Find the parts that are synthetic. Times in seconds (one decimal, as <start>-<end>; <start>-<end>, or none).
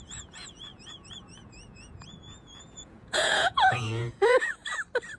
0.0-4.6